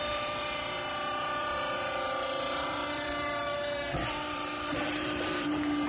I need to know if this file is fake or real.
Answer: fake